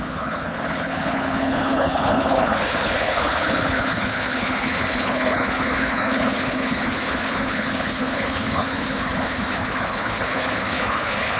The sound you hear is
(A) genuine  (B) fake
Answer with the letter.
B